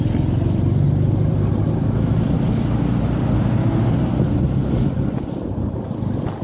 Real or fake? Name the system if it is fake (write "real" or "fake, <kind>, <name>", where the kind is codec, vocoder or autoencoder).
real